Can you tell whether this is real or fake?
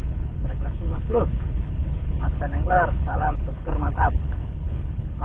fake